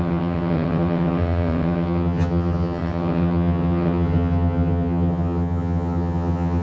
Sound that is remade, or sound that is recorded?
remade